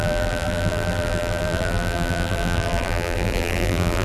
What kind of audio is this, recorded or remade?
remade